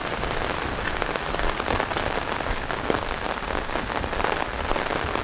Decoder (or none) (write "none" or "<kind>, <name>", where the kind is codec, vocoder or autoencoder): none